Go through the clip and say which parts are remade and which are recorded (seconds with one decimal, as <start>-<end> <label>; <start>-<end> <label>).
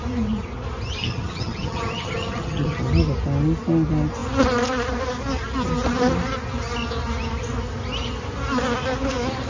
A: 0.0-1.0 recorded; 1.0-2.8 remade; 2.8-9.5 recorded